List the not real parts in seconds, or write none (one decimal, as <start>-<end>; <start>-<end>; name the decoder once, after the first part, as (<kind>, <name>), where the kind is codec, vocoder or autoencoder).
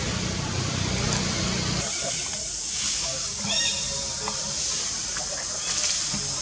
2.6-3.4 (codec, DAC)